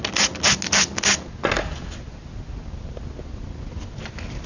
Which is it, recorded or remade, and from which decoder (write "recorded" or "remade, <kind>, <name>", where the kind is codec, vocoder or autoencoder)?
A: recorded